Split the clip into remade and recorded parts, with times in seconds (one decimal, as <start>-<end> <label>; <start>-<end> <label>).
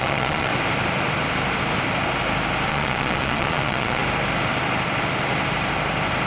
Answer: 0.0-0.5 remade; 0.5-2.7 recorded; 2.7-4.0 remade; 4.0-6.3 recorded